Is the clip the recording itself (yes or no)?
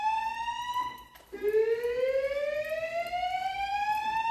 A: yes